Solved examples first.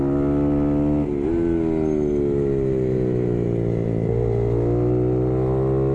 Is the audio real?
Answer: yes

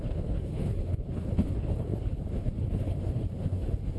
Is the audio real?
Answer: no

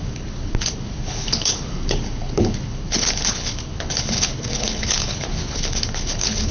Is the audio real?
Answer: no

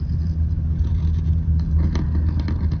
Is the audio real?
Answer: yes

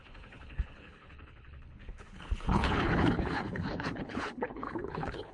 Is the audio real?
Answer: no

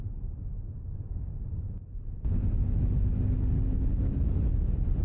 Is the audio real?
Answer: yes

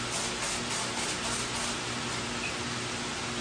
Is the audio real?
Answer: yes